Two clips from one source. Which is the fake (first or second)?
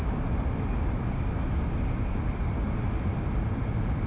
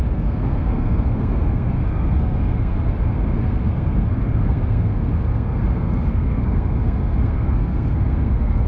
second